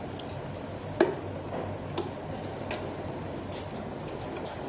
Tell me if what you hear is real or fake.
real